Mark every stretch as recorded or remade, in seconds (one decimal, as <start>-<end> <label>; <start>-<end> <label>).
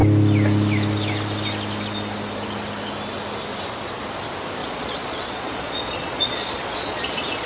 0.0-4.6 recorded; 4.6-7.5 remade